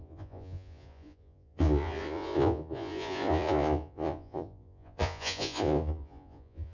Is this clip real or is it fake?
fake